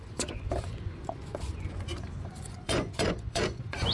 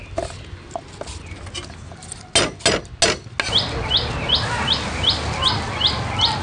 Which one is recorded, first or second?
second